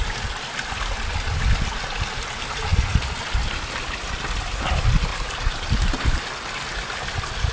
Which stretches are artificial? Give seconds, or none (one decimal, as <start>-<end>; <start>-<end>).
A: 5.1-5.6